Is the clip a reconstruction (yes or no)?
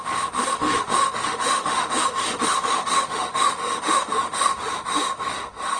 yes